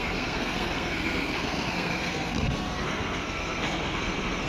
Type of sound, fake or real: fake